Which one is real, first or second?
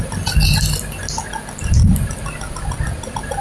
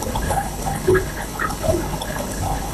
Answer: first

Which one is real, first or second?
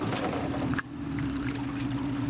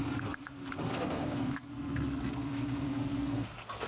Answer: first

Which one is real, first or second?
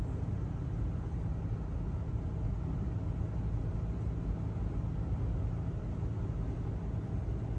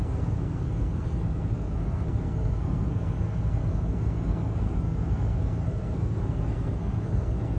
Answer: first